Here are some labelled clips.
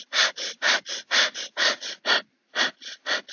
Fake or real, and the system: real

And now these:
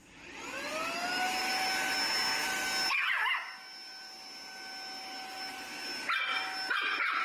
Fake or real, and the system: real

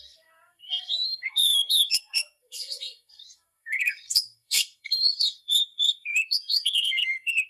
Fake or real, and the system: fake, codec, SNAC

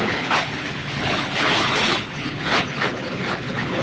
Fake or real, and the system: fake, codec, HILCodec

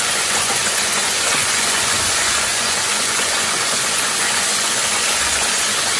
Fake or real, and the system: fake, vocoder, Vocos